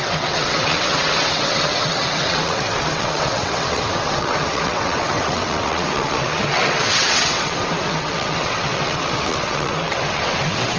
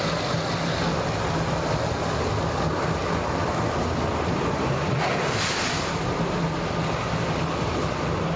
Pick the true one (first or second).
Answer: second